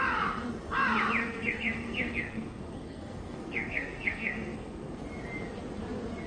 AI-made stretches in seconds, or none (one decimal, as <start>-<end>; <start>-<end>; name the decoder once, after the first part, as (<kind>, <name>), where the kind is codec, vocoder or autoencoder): 1.2-5.0 (codec, SNAC)